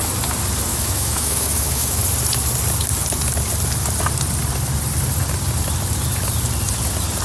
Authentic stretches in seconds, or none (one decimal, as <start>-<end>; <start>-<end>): 0.0-0.7; 2.0-7.2